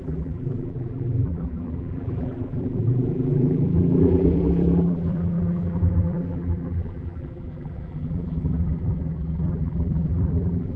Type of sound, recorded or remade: remade